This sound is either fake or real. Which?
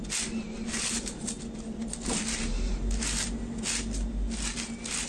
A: real